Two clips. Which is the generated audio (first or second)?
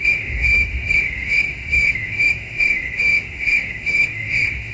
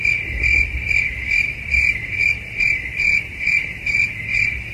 first